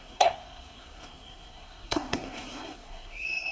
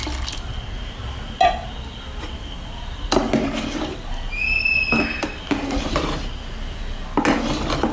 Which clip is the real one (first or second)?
second